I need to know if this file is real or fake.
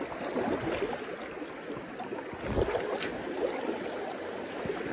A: real